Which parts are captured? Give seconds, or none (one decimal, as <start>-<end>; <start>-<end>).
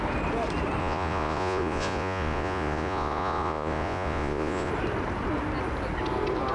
0.0-0.8; 4.7-6.5